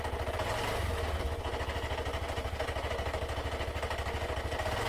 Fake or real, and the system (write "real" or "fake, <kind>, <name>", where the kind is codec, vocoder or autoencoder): real